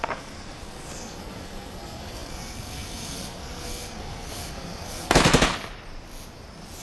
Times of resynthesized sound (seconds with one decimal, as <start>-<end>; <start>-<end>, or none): 0.0-5.5